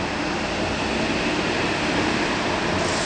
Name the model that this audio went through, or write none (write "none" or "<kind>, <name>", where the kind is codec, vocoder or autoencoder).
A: none